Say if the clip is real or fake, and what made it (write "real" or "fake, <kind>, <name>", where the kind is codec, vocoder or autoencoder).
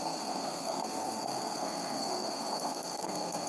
fake, codec, SNAC